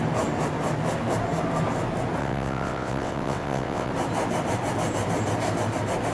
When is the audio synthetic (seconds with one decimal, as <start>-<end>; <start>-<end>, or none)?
2.2-3.9